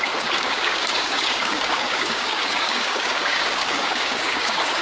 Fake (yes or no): yes